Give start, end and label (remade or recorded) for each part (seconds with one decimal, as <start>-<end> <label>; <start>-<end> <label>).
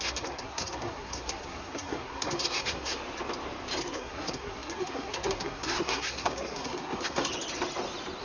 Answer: 0.0-3.0 remade; 3.0-3.8 recorded; 3.8-7.3 remade; 7.3-8.2 recorded